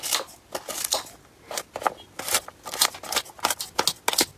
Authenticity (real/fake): real